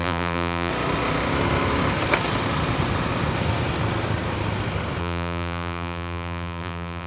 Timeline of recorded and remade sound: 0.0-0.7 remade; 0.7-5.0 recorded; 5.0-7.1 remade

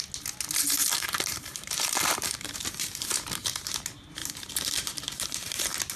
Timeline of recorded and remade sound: 0.0-0.8 recorded; 0.8-3.6 remade; 3.6-4.2 recorded; 4.2-5.6 remade; 5.6-6.0 recorded

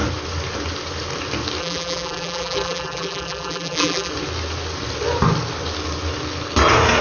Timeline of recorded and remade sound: 0.0-1.6 recorded; 1.6-4.1 remade; 4.1-7.0 recorded

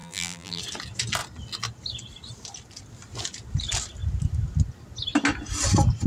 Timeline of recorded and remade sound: 0.0-0.6 remade; 0.6-6.1 recorded